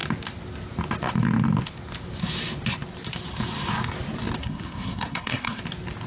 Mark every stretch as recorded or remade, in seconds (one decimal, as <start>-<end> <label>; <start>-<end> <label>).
0.0-4.4 recorded; 4.4-5.6 remade; 5.6-6.1 recorded